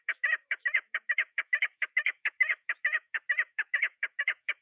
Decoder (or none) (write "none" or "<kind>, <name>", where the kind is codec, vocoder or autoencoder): autoencoder, DAC-VAE